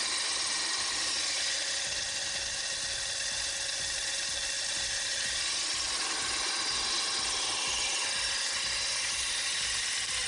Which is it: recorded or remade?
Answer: recorded